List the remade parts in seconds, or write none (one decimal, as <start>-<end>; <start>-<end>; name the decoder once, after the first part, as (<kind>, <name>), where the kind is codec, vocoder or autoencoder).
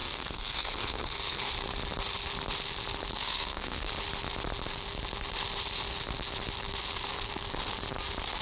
0.0-1.5 (codec, SNAC); 3.1-3.9